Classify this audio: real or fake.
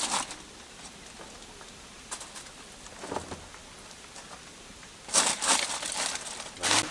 real